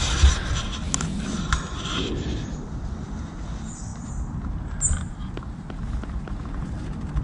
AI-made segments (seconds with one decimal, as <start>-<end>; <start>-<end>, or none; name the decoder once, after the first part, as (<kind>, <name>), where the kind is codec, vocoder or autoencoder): none